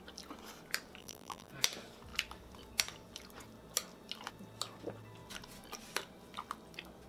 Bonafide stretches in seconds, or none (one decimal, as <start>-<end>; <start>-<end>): 0.0-1.0; 1.5-7.1